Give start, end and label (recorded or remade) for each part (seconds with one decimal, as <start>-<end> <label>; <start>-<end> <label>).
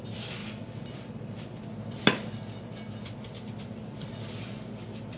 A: 0.0-0.4 recorded; 0.4-1.6 remade; 1.6-5.2 recorded